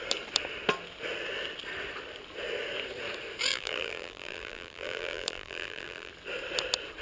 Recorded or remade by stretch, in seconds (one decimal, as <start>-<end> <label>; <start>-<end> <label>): 0.0-3.5 recorded; 3.5-6.1 remade; 6.1-7.0 recorded